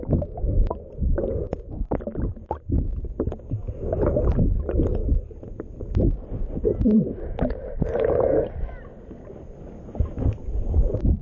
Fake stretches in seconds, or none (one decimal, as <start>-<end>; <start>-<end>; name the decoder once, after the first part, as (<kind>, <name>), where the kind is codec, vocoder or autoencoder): none